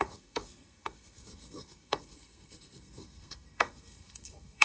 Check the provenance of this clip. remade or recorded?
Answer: remade